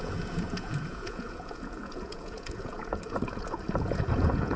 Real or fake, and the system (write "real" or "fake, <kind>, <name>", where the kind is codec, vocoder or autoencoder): fake, vocoder, Vocos